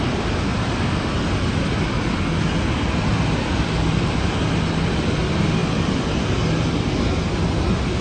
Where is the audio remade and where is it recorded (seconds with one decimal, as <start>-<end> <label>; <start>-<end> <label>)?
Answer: 0.0-8.0 recorded